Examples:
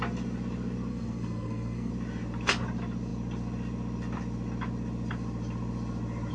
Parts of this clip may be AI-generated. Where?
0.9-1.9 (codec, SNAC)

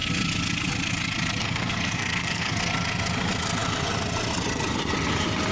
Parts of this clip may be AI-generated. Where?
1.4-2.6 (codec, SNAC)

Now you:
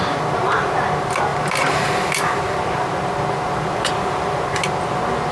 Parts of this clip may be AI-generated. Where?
none